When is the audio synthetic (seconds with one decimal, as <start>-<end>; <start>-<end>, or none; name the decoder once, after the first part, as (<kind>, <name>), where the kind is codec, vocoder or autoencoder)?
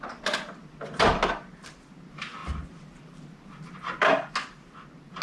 none